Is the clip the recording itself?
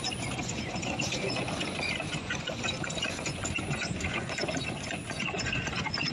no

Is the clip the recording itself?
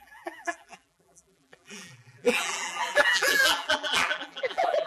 no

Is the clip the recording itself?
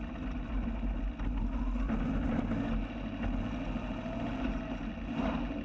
yes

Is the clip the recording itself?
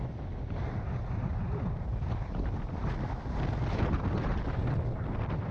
yes